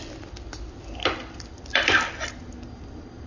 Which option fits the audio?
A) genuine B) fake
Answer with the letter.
A